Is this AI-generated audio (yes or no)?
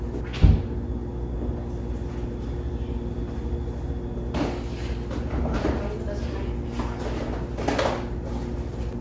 no